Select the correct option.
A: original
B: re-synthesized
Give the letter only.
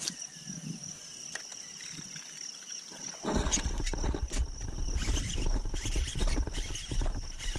A